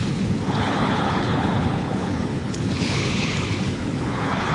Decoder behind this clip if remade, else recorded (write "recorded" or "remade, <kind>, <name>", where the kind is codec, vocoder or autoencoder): remade, codec, HILCodec